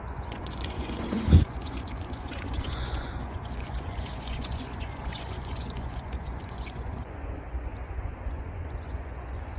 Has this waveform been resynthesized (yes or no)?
yes